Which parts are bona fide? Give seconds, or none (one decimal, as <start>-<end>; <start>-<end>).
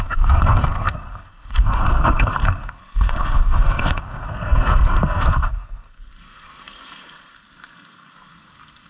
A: none